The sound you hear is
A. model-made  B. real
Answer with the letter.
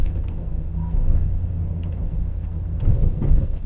A